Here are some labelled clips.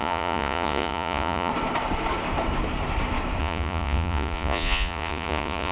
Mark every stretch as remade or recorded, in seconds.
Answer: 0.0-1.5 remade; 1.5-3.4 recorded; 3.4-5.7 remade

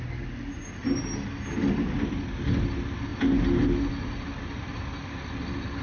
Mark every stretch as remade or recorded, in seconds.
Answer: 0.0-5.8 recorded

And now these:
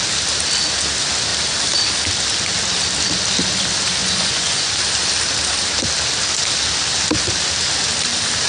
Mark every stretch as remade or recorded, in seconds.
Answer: 0.0-4.0 recorded; 4.0-4.7 remade; 4.7-8.5 recorded

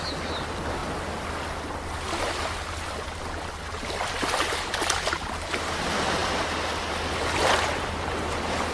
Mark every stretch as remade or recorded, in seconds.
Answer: 0.0-8.7 recorded

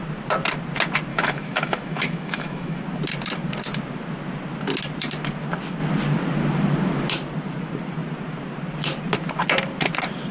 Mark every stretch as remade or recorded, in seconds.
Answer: 0.0-1.1 recorded; 1.1-2.8 remade; 2.8-10.3 recorded

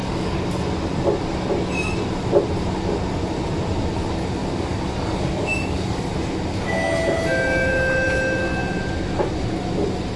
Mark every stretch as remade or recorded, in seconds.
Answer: 0.0-0.5 remade; 0.5-4.4 recorded; 4.4-6.1 remade; 6.1-10.2 recorded

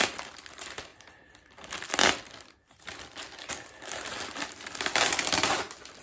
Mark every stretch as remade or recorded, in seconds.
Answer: 0.0-6.0 recorded

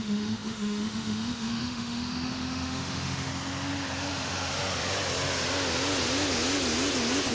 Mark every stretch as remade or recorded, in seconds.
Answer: 0.0-3.3 remade; 3.3-4.1 recorded; 4.1-4.5 remade; 4.5-7.3 recorded